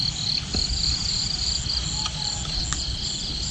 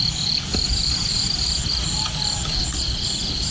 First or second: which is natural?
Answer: first